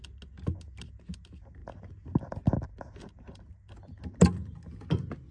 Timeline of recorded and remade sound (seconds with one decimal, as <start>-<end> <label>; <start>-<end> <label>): 0.0-5.3 recorded